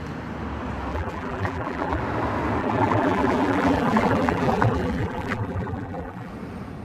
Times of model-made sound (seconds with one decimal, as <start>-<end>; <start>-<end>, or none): 0.9-2.0; 2.6-6.3